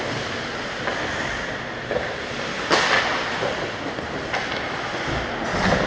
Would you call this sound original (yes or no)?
yes